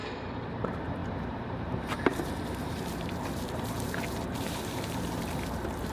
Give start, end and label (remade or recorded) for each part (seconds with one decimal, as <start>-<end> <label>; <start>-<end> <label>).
0.0-0.6 recorded; 0.6-5.9 remade

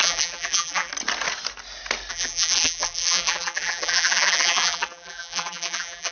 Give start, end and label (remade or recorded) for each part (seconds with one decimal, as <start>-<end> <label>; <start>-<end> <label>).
0.0-0.9 remade; 0.9-2.1 recorded; 2.1-6.1 remade

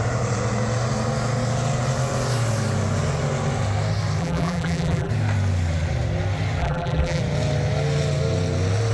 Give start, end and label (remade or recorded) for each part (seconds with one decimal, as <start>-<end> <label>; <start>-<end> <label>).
0.0-4.2 recorded; 4.2-5.1 remade; 5.1-6.6 recorded; 6.6-7.2 remade; 7.2-8.9 recorded

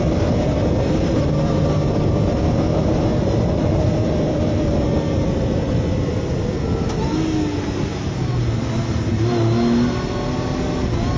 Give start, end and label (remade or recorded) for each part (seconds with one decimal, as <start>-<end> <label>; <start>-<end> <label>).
0.0-2.7 recorded; 2.7-3.4 remade; 3.4-7.9 recorded; 7.9-8.5 remade; 8.5-11.2 recorded

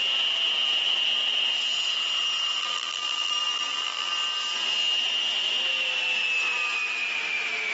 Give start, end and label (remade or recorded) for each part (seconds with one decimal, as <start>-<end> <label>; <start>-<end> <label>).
0.0-2.6 recorded; 2.6-4.1 remade; 4.1-7.7 recorded

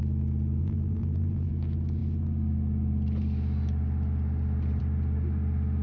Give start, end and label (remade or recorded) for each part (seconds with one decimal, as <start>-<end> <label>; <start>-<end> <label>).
0.0-0.6 recorded; 0.6-1.5 remade; 1.5-5.8 recorded